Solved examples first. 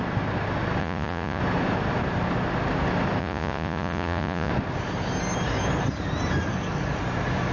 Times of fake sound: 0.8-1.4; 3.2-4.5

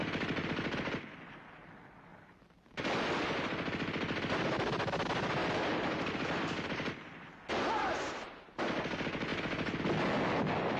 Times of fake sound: 0.0-0.9; 2.1-2.8; 5.4-7.3; 9.3-9.8

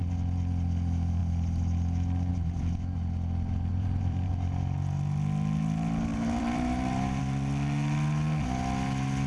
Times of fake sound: 3.7-4.3; 6.1-7.2

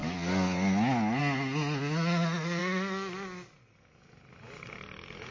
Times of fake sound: none